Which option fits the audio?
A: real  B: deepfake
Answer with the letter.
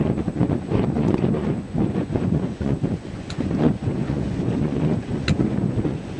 B